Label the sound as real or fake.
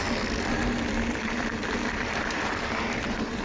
fake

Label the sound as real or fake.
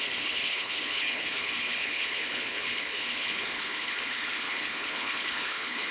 fake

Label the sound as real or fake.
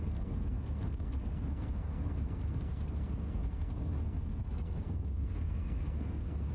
fake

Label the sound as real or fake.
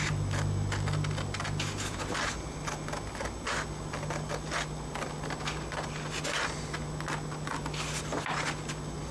real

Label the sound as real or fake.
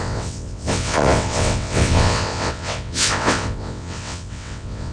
fake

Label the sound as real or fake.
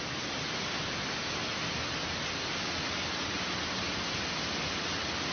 real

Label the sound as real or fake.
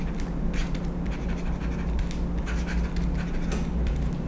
real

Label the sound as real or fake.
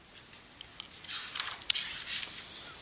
real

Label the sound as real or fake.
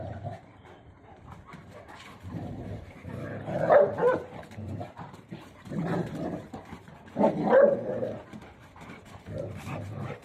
fake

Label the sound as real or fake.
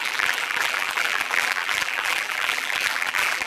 fake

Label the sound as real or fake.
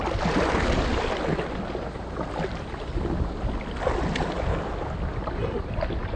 real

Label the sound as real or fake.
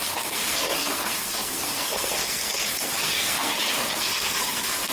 fake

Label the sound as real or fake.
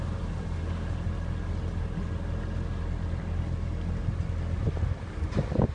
real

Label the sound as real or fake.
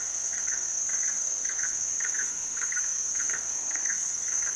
fake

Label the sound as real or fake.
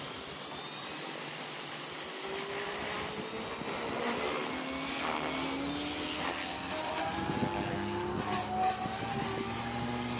real